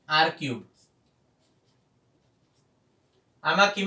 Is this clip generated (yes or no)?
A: no